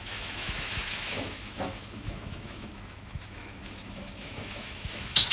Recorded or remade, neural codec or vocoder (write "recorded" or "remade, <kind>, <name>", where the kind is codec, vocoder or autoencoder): remade, autoencoder, DAC-VAE